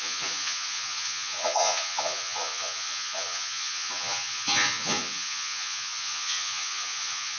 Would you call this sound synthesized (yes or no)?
yes